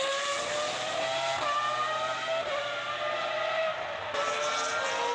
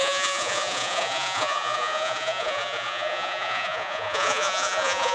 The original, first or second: first